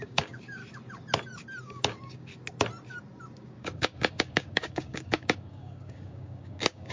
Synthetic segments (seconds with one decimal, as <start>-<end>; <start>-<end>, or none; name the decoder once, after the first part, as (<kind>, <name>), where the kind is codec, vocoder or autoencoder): 0.0-0.6 (codec, DAC); 1.6-2.3; 3.4-6.9